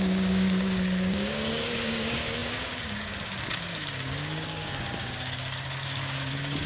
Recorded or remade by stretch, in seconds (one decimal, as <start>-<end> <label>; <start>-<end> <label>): 0.0-6.7 remade